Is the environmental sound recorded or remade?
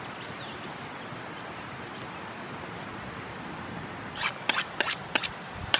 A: recorded